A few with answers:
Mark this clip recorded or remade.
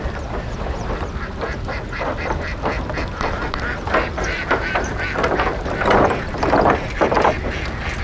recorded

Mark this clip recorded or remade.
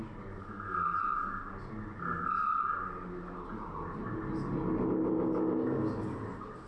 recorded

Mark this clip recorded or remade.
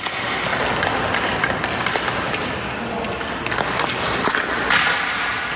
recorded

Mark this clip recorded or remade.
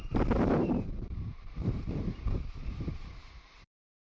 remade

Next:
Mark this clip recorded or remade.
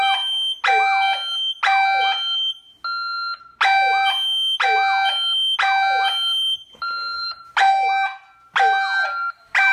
recorded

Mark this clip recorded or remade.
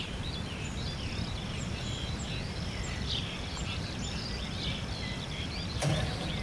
remade